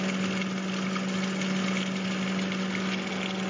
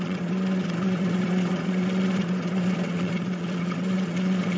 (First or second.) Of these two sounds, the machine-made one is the second